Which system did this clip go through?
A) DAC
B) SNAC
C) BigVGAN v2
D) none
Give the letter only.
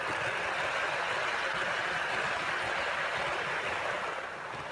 D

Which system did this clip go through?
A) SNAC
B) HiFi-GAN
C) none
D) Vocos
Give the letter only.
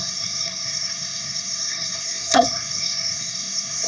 A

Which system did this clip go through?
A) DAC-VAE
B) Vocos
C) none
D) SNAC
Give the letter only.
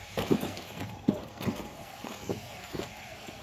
D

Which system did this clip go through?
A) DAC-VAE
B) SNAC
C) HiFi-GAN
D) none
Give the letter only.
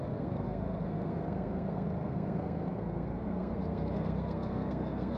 B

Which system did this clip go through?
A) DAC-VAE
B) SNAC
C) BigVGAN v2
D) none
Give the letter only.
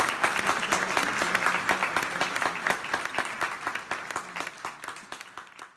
D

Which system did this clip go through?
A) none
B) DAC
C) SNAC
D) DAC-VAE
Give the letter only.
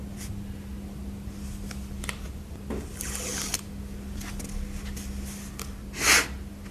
A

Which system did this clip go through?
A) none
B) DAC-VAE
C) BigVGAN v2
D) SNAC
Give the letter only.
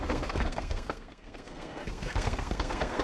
D